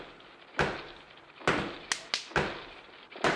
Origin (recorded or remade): recorded